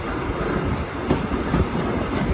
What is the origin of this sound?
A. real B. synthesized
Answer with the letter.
A